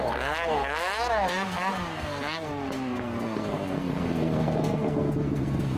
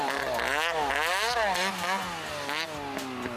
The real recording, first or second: second